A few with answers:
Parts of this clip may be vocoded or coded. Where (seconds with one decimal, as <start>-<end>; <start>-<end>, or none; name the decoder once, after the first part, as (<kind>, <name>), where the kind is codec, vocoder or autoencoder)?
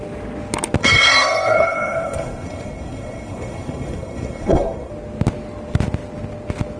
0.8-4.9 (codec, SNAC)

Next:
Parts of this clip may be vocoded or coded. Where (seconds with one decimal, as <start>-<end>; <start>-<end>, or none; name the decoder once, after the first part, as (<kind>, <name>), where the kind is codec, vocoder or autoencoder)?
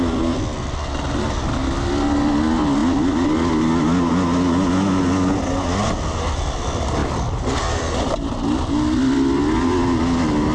none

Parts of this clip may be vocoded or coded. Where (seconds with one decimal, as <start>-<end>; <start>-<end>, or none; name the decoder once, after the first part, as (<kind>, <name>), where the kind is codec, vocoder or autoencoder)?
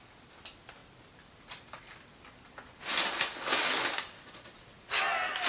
none